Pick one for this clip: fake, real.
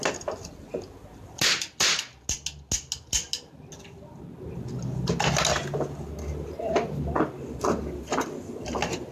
real